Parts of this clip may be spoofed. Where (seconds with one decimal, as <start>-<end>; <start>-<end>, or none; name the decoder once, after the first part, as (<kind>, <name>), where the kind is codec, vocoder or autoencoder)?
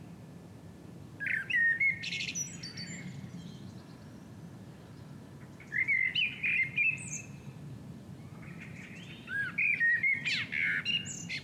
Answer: 6.1-9.8 (vocoder, BigVGAN v2)